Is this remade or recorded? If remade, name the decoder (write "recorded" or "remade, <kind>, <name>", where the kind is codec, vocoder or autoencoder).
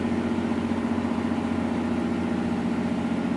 recorded